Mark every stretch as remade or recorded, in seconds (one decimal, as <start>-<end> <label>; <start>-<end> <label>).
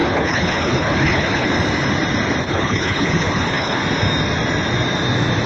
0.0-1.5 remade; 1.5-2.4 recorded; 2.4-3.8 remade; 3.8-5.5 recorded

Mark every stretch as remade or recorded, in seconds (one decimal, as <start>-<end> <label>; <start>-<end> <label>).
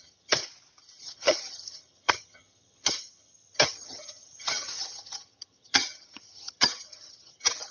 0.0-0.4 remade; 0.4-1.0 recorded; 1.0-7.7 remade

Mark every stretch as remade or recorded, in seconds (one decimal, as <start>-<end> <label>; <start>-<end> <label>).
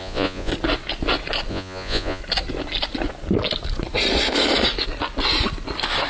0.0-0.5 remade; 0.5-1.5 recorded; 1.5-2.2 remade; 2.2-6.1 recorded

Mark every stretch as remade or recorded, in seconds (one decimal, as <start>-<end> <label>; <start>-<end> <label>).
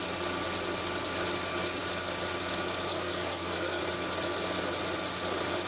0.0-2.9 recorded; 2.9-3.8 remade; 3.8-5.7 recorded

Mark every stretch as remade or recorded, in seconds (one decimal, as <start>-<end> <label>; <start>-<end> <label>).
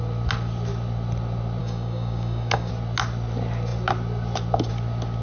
0.0-1.6 recorded; 1.6-2.7 remade; 2.7-5.2 recorded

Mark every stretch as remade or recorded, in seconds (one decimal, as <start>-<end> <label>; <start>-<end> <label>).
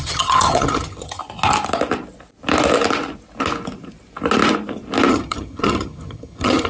0.0-1.2 remade; 1.2-5.1 recorded; 5.1-6.7 remade